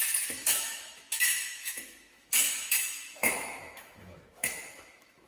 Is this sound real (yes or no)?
no